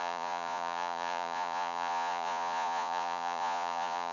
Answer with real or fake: fake